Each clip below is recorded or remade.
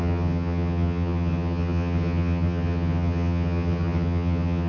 remade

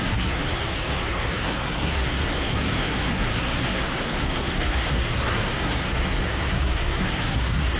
remade